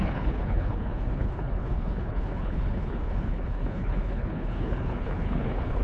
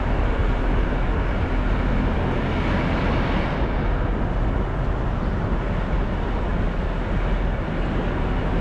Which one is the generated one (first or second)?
first